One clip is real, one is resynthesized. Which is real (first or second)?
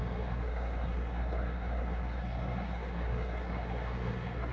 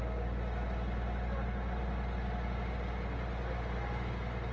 second